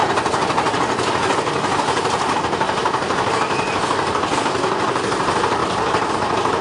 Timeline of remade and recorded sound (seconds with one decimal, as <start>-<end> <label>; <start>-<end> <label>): 0.0-5.6 remade; 5.6-6.1 recorded; 6.1-6.6 remade